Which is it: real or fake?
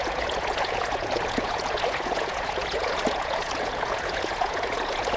fake